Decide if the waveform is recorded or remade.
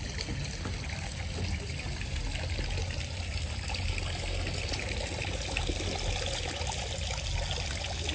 recorded